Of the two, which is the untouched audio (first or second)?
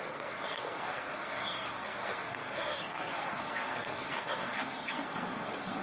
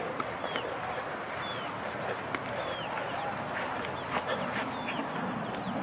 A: second